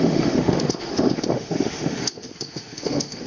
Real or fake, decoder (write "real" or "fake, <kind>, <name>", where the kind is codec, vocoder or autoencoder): fake, autoencoder, DAC-VAE